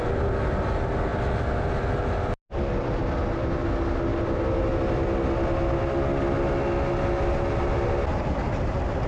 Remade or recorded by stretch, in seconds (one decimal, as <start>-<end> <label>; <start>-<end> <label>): 0.0-9.1 recorded